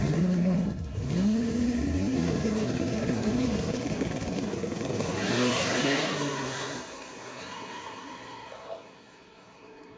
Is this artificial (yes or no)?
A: yes